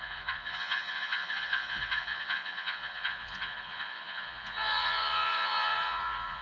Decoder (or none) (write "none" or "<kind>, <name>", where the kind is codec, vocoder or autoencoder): vocoder, Vocos